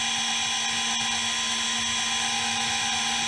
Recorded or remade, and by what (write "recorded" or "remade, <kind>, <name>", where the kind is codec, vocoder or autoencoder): recorded